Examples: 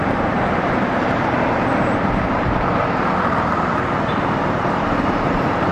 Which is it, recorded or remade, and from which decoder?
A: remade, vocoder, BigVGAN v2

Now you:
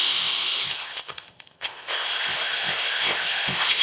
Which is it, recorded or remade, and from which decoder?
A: remade, codec, ZipCodec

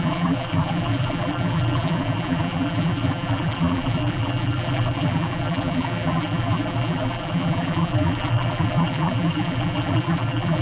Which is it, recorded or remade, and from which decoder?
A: remade, vocoder, BigVGAN v2